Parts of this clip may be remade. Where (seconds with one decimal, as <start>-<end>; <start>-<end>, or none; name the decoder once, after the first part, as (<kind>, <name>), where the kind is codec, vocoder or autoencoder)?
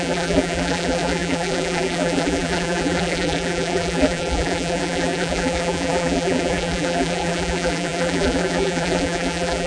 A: 0.0-9.7 (vocoder, BigVGAN v2)